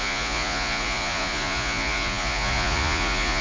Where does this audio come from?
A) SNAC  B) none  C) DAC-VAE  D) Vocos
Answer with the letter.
D